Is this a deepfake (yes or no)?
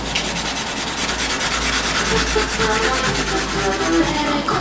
no